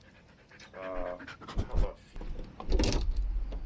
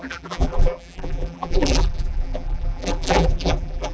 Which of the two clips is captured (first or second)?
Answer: first